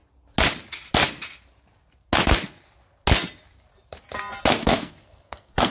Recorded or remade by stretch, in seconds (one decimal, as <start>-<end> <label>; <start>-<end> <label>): 0.0-4.6 recorded; 4.6-5.7 remade